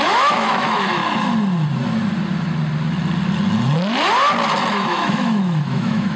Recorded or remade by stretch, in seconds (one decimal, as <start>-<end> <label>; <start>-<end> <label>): 0.0-1.0 remade; 1.0-4.7 recorded; 4.7-6.2 remade